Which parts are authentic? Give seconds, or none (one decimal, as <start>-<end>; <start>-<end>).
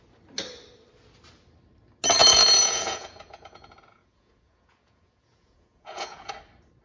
0.0-2.2; 6.3-6.8